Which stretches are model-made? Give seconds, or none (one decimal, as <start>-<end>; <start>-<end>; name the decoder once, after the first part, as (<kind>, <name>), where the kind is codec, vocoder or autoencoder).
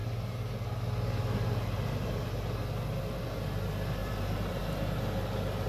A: 4.0-4.6 (vocoder, BigVGAN v2)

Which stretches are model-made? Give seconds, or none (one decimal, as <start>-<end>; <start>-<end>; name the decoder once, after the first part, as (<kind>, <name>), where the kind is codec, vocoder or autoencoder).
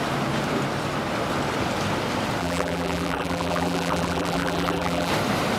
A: 2.4-5.1 (vocoder, BigVGAN v2)